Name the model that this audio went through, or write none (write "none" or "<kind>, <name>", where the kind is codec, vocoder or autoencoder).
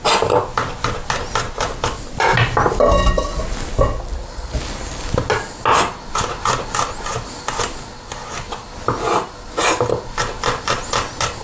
none